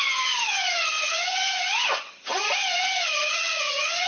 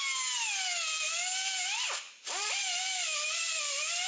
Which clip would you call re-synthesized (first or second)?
first